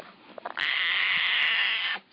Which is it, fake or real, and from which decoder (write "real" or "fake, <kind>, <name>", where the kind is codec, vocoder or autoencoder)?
real